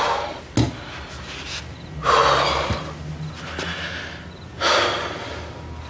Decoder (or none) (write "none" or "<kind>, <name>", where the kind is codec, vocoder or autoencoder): none